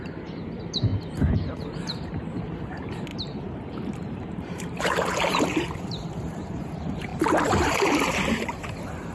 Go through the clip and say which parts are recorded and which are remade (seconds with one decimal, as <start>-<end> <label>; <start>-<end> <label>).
0.0-9.1 remade